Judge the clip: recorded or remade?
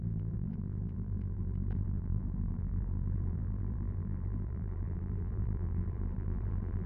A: remade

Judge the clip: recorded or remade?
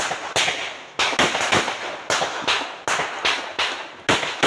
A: recorded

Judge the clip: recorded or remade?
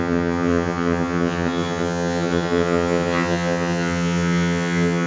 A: remade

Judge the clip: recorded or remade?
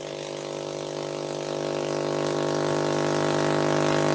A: recorded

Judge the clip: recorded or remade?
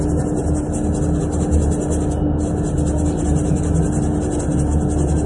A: recorded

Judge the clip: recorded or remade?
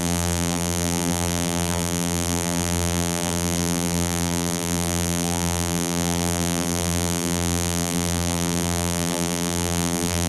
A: remade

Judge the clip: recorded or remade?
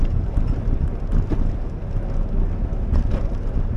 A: recorded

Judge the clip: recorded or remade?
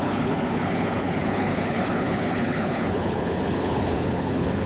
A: remade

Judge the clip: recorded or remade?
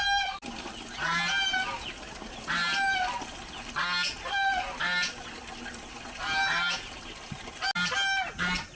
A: recorded